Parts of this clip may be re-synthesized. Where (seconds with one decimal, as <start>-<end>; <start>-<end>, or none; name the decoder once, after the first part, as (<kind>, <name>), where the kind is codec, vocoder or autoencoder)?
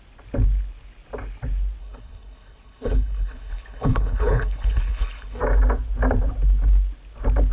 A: 1.8-5.4 (codec, HILCodec)